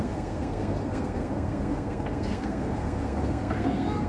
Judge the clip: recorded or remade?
remade